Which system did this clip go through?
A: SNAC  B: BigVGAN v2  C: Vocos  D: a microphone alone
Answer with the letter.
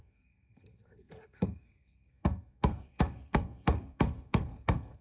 A